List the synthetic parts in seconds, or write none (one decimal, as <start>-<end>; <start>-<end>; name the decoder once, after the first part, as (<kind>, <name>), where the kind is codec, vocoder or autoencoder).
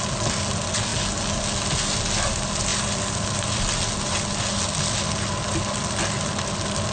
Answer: none